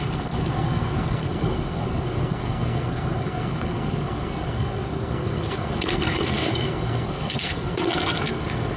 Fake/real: fake